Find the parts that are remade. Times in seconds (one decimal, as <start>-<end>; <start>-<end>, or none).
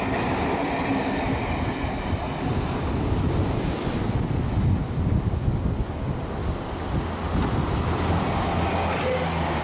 none